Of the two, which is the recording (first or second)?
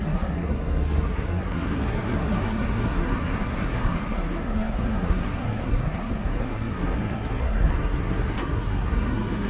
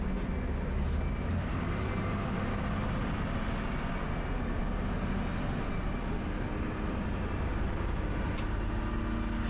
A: second